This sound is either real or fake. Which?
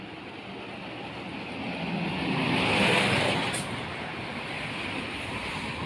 real